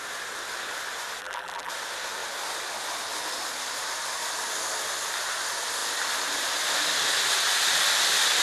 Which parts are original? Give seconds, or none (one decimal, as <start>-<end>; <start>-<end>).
0.0-1.2; 1.7-8.4